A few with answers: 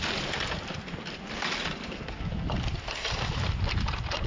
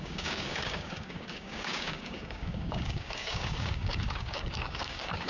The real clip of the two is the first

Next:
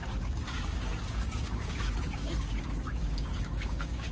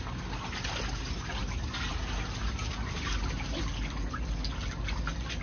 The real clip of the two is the second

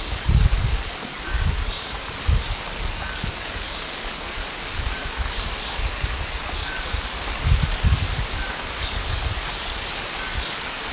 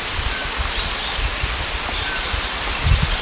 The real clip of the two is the second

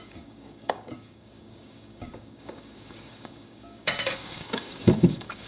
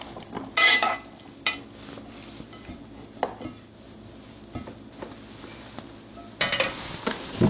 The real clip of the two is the second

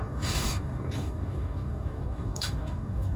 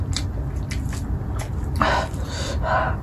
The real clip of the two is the second